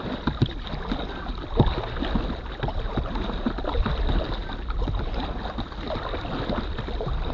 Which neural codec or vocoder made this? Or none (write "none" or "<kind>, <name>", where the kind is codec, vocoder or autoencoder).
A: none